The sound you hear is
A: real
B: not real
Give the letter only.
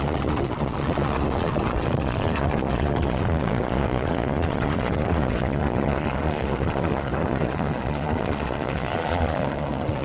B